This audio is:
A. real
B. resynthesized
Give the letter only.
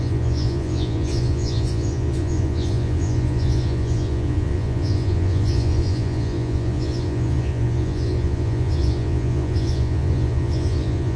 B